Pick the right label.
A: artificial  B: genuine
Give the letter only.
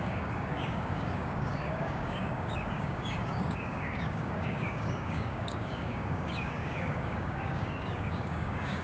A